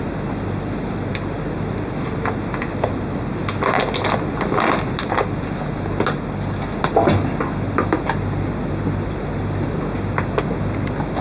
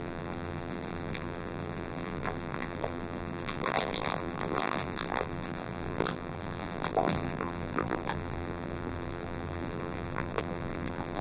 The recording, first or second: first